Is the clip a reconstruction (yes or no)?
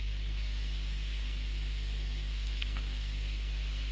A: yes